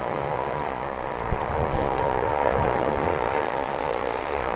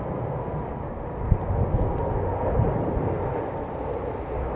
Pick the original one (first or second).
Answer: second